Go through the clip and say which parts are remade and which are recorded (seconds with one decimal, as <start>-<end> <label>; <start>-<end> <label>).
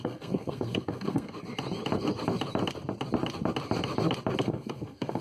0.0-1.3 remade; 1.3-4.4 recorded; 4.4-5.2 remade